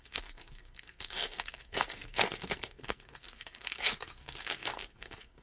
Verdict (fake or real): fake